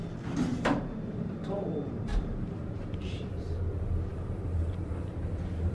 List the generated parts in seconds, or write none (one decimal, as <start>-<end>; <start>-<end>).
0.5-3.5; 4.1-5.1